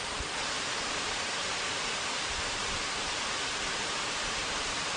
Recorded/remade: remade